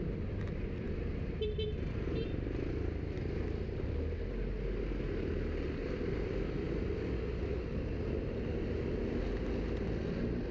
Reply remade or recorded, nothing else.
recorded